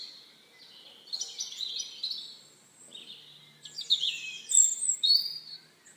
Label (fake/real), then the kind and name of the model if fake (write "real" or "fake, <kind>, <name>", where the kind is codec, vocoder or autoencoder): real